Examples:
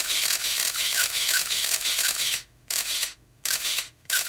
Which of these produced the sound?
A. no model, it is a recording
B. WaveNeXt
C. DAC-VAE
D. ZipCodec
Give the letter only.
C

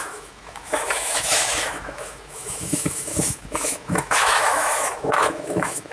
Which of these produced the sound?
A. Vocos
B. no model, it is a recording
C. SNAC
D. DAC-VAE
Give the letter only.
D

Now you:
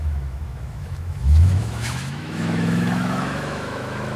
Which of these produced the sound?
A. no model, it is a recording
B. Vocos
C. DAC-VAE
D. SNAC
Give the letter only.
C